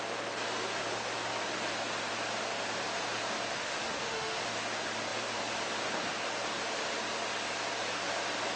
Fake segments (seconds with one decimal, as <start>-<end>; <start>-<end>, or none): 3.5-4.4